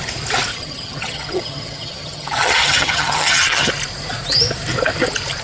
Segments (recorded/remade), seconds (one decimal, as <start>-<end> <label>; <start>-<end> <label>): 0.0-0.5 recorded; 0.5-3.7 remade; 3.7-5.4 recorded

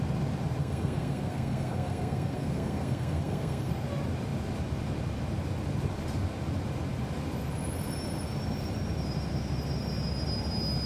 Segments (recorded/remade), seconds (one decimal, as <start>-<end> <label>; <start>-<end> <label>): 0.0-0.6 recorded; 0.6-3.7 remade; 3.7-10.9 recorded

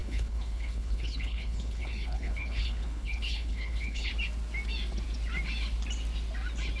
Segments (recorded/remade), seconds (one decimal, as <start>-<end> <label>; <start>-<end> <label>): 0.0-4.1 remade; 4.1-6.8 recorded

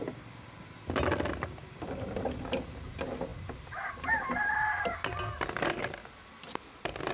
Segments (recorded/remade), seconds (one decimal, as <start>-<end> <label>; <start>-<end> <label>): 0.0-7.1 recorded